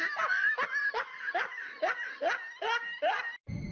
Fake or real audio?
real